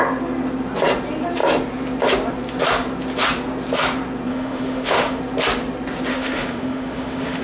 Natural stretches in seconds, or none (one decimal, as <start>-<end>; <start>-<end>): 0.0-4.3; 5.2-6.1